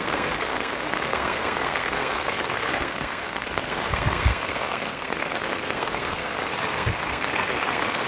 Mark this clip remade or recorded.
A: remade